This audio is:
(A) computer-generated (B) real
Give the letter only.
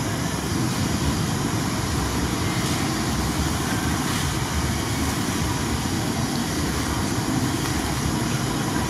B